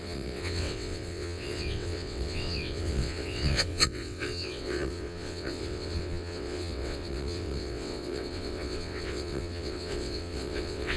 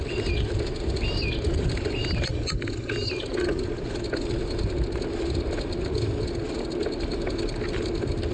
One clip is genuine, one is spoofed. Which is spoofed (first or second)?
first